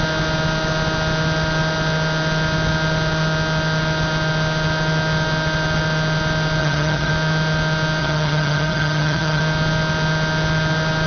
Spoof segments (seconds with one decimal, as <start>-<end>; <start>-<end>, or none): 6.6-7.1; 8.0-9.4